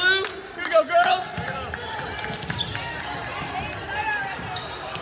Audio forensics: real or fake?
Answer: real